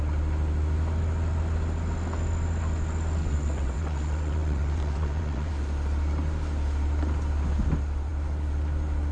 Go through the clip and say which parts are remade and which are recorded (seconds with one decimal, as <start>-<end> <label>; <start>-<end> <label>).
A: 0.0-3.2 recorded; 3.2-5.5 remade; 5.5-9.1 recorded